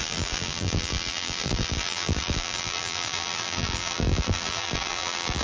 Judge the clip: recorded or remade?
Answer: remade